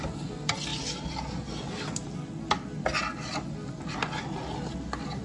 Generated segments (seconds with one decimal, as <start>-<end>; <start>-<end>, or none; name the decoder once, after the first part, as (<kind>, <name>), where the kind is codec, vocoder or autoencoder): none